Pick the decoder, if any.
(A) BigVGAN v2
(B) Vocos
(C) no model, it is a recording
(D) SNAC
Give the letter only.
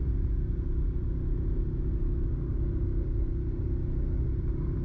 C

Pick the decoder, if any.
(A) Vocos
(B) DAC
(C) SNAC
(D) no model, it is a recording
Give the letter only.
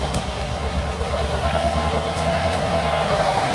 C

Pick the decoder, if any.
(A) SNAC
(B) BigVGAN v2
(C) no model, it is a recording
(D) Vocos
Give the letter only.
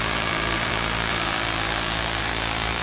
B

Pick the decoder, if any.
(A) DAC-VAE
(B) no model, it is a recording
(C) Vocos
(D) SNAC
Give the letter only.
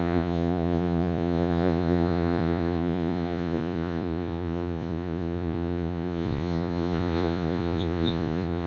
C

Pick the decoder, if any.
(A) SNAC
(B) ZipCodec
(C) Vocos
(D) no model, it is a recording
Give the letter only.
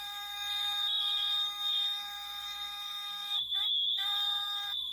A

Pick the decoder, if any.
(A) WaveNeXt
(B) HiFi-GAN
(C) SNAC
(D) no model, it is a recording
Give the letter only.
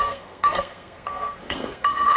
C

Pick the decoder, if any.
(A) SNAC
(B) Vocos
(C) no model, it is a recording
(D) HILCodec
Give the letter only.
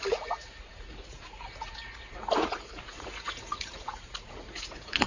B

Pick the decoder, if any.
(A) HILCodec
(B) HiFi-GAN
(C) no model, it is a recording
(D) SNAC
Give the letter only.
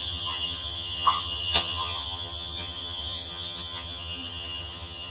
B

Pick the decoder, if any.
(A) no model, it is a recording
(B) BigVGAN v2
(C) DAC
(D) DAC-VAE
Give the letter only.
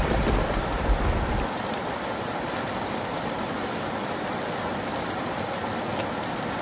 B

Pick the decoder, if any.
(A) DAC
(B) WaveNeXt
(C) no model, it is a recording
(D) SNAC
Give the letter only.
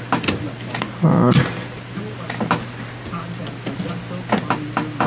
C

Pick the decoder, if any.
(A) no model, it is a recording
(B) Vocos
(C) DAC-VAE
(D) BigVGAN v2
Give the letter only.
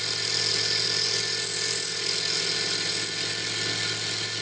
A